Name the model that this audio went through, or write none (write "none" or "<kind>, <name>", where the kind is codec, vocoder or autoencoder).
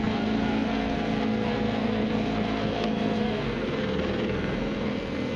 codec, SNAC